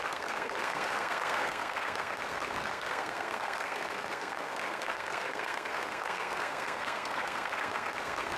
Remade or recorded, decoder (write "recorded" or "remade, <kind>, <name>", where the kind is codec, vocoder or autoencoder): remade, codec, SNAC